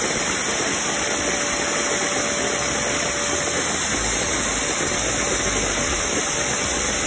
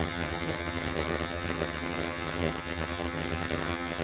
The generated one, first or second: second